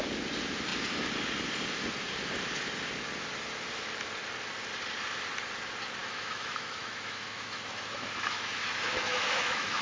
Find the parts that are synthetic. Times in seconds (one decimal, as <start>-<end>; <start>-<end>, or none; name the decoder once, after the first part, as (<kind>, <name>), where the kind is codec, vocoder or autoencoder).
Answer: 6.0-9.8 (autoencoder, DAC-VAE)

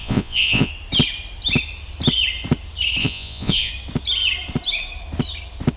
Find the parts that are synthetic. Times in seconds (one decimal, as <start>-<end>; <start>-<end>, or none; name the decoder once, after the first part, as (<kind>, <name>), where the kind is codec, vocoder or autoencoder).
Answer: 0.0-0.7 (vocoder, Vocos); 3.0-3.7

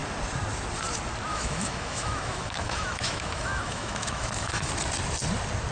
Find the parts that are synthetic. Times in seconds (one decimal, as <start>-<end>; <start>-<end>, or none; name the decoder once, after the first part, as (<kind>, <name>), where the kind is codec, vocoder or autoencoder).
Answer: 1.3-4.7 (autoencoder, DAC-VAE)

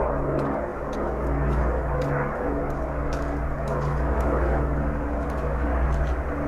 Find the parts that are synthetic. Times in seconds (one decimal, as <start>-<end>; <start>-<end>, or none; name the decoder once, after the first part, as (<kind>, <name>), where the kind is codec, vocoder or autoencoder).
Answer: 0.0-5.7 (codec, DAC)